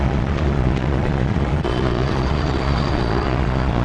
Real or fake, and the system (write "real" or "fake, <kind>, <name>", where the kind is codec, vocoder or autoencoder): fake, vocoder, Vocos